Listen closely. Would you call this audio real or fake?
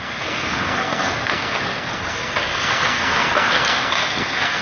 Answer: fake